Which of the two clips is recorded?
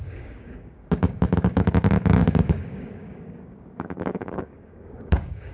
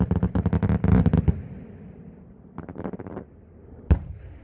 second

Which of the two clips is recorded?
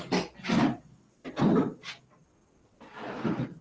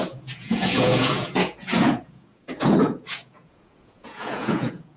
first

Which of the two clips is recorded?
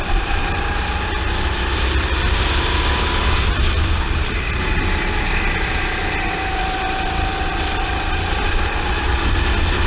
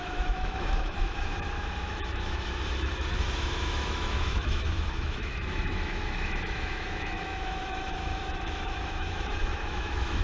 first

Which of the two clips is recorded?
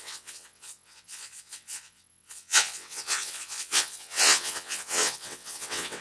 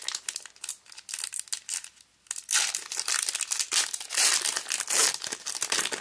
second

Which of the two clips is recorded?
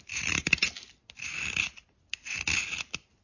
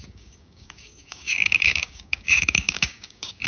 first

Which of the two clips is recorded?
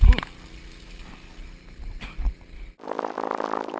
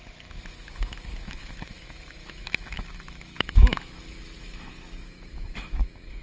first